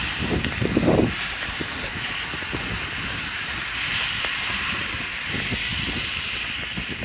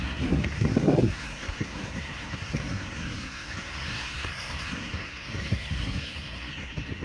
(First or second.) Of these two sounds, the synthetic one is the second